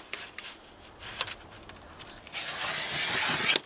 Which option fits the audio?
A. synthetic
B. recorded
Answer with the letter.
B